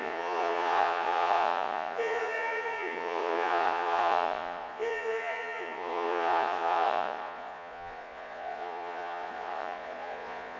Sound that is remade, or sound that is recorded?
remade